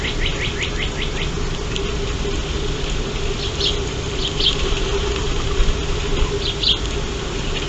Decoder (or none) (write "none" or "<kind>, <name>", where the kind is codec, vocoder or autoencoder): none